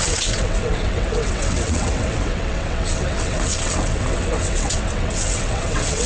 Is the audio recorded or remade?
remade